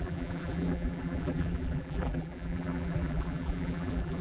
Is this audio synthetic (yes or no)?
yes